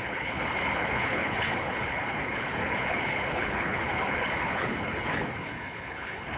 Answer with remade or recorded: remade